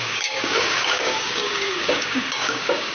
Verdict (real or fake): fake